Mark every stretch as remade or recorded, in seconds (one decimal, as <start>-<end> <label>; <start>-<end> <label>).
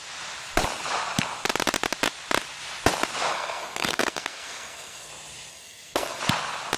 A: 0.0-3.3 recorded; 3.3-5.1 remade; 5.1-5.5 recorded; 5.5-6.2 remade; 6.2-6.8 recorded